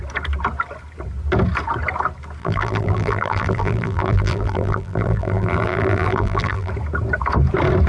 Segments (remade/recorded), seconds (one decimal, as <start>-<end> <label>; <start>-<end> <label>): 0.0-2.4 recorded; 2.4-6.7 remade; 6.7-7.9 recorded